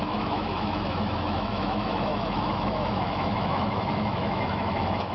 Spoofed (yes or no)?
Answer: yes